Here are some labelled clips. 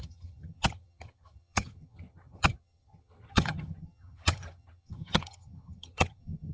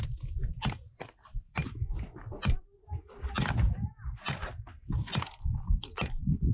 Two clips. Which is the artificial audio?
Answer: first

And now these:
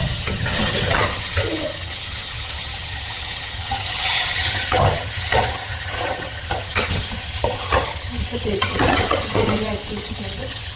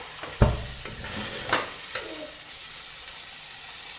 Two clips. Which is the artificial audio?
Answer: first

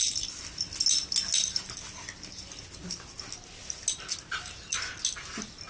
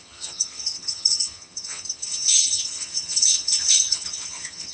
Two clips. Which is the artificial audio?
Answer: second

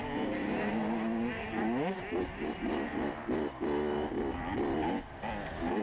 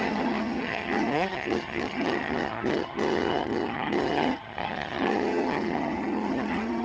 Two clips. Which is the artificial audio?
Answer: second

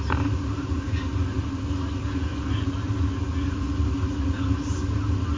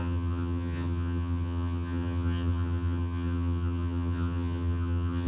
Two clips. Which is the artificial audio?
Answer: second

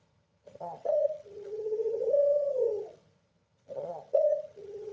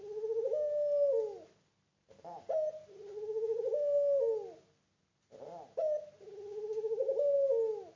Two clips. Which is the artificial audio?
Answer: first